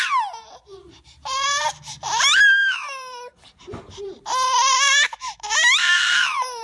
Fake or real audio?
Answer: fake